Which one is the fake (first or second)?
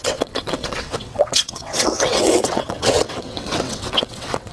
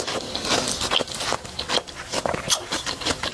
first